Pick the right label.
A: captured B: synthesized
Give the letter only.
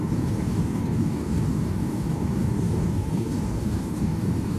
B